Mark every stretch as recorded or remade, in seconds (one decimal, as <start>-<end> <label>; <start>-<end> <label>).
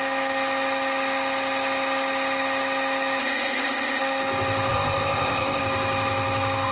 0.0-3.2 recorded; 3.2-4.0 remade; 4.0-4.7 recorded; 4.7-5.6 remade; 5.6-6.7 recorded